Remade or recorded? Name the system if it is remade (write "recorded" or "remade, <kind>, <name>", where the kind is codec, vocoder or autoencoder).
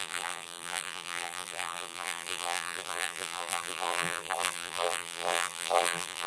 remade, vocoder, BigVGAN v2